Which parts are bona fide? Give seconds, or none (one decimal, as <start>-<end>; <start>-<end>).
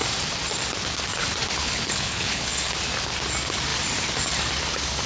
0.0-1.6; 2.7-5.1